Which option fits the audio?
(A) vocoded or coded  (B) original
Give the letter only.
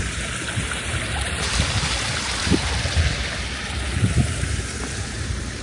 A